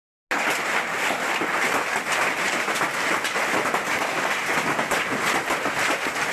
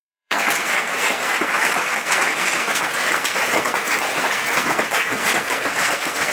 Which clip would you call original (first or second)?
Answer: first